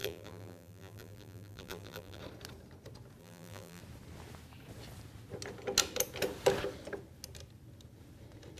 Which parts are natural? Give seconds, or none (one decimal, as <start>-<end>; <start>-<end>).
2.2-3.2; 3.8-8.6